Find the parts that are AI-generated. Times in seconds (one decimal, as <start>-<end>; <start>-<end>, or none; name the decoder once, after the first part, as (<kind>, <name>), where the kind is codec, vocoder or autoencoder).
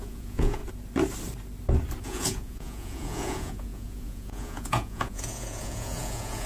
0.0-0.6 (vocoder, Vocos); 2.0-6.5